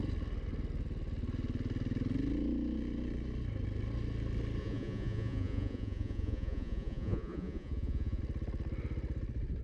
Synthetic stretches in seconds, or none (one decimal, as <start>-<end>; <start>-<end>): 4.6-8.2